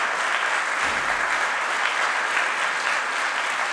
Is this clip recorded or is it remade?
recorded